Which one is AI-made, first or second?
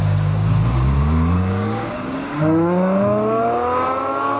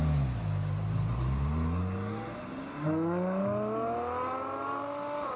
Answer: first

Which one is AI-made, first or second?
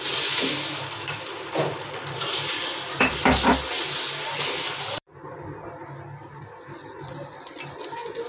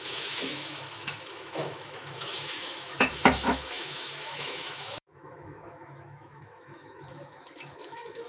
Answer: second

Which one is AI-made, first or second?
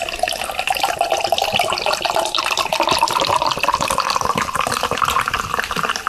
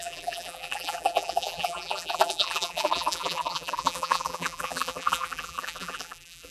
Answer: second